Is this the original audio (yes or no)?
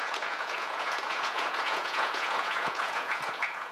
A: no